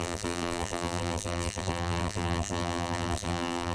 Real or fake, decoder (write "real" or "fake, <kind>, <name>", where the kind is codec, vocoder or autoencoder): fake, vocoder, BigVGAN v2